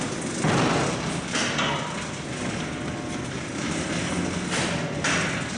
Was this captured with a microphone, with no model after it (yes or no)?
yes